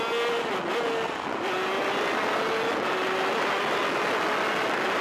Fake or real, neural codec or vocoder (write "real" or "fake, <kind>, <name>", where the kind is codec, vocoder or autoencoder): real